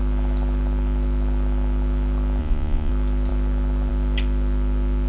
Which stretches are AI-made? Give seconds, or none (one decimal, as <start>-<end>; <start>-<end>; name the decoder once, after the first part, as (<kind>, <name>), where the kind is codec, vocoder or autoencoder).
2.4-2.9 (vocoder, Vocos)

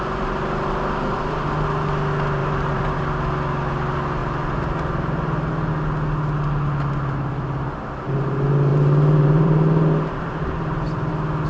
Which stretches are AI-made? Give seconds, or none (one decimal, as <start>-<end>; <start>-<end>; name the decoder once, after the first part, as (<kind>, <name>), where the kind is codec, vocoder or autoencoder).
2.4-3.0 (vocoder, BigVGAN v2); 4.2-5.7; 8.7-11.1